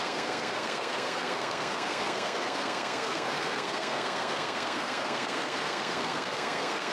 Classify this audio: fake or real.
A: fake